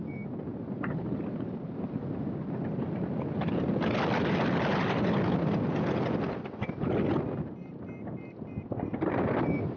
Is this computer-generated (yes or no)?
no